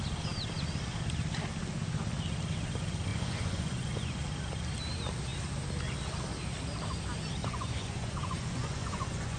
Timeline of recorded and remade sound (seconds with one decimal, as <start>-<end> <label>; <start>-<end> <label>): 0.0-3.1 recorded; 3.1-4.2 remade; 4.2-7.4 recorded; 7.4-9.4 remade